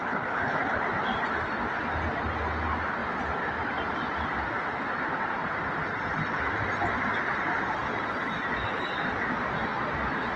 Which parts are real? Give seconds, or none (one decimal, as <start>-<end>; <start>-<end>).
0.8-10.4